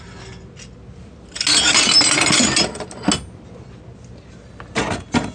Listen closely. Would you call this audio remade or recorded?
recorded